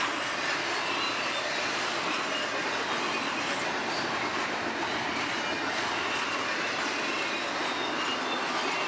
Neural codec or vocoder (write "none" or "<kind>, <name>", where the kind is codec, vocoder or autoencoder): none